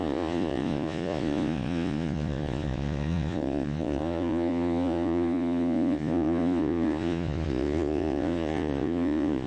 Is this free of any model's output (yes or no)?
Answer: no